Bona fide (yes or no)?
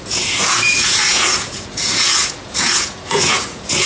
no